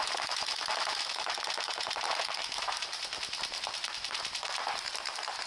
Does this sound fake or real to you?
fake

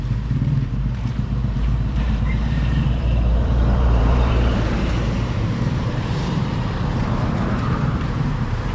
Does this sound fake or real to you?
fake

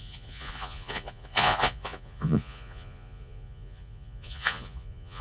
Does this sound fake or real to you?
fake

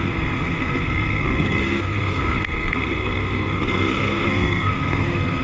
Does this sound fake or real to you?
fake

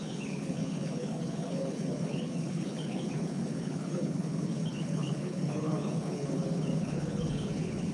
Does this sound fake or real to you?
fake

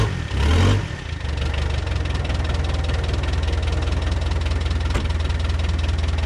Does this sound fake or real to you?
real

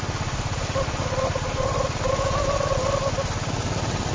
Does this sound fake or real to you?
real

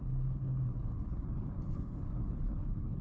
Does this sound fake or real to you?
fake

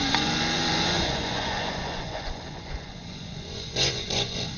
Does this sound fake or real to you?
fake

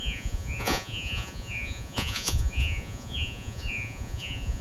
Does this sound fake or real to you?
fake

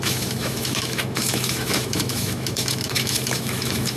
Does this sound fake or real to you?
fake